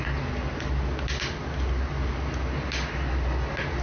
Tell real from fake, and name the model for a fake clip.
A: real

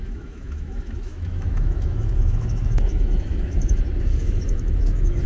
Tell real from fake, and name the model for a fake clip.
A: fake, autoencoder, DAC-VAE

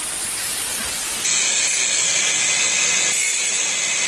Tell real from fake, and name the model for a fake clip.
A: real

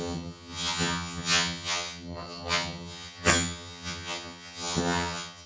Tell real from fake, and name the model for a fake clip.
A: fake, vocoder, HiFi-GAN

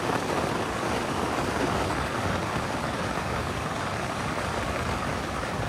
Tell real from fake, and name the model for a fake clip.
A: fake, codec, DAC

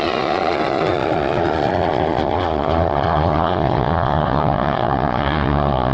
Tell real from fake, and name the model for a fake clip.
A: fake, vocoder, Vocos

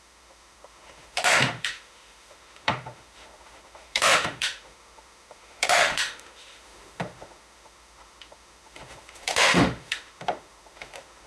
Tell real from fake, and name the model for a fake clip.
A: fake, autoencoder, DAC-VAE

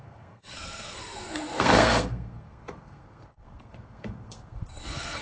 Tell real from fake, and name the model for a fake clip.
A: fake, codec, SNAC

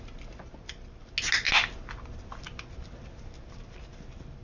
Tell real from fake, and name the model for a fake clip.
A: real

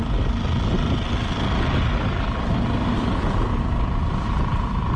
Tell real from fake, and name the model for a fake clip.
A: real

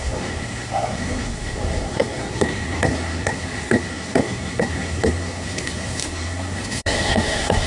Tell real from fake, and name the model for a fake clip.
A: fake, codec, SNAC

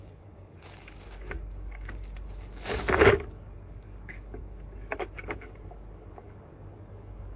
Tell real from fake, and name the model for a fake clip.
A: fake, codec, DAC